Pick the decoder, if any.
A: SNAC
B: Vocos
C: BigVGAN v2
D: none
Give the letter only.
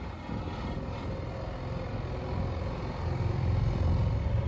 D